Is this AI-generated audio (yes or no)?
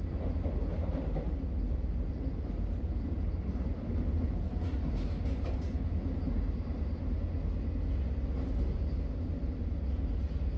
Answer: no